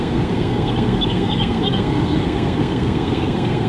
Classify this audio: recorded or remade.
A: remade